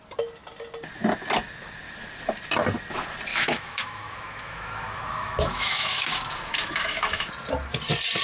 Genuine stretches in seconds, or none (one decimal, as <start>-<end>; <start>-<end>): 0.0-3.3; 7.3-8.2